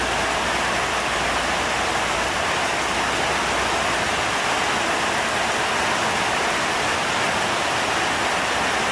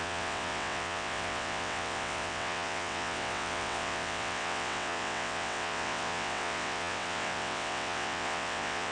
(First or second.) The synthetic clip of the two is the second